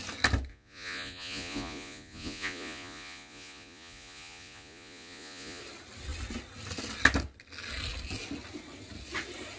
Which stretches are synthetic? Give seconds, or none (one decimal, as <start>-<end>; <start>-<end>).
0.5-5.6